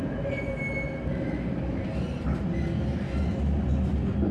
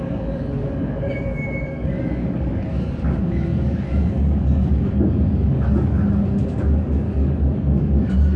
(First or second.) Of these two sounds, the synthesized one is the second